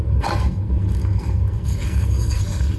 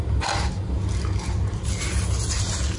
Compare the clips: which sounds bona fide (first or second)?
second